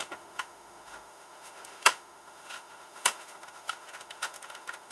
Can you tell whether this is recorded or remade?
remade